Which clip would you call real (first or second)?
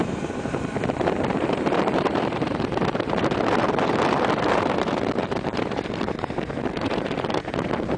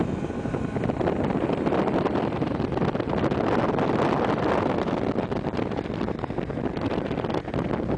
second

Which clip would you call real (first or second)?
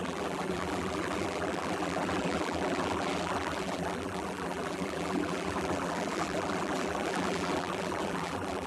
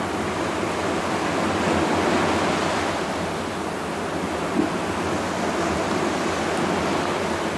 second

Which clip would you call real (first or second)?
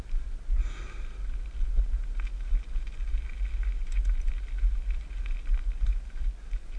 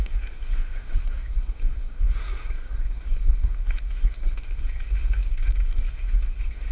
first